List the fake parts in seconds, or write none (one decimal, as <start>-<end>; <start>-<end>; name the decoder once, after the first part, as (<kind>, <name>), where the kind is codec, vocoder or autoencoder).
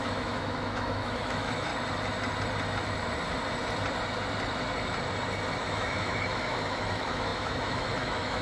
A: 0.0-1.7 (autoencoder, DAC-VAE); 5.6-8.4